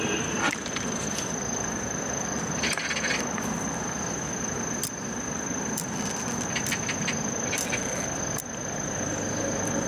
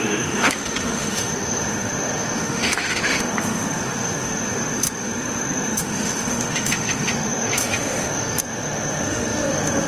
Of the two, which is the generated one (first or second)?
second